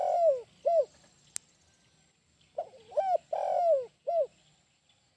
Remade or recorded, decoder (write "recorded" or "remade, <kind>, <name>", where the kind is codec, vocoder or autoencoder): recorded